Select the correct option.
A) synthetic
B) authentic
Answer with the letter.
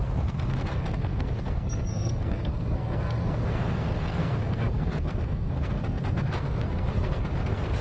A